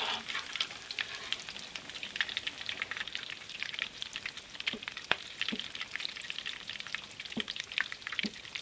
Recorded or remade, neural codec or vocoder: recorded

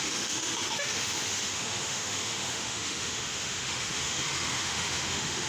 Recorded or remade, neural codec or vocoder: remade, autoencoder, DAC-VAE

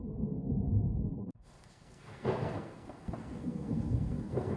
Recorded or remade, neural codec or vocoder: remade, codec, SNAC